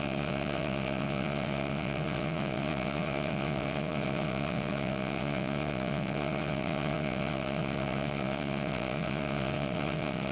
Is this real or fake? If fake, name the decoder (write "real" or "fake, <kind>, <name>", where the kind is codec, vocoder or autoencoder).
fake, vocoder, WaveNeXt